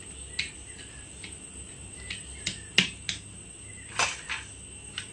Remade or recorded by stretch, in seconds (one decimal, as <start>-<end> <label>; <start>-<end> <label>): 0.0-5.1 recorded